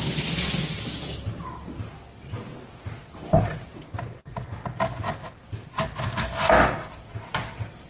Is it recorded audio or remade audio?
recorded